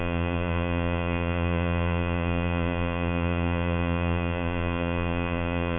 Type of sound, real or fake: fake